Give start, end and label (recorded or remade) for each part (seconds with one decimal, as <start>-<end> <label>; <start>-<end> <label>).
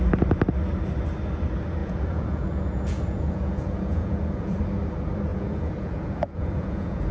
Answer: 0.0-1.8 recorded; 1.8-4.6 remade; 4.6-5.3 recorded; 5.3-7.1 remade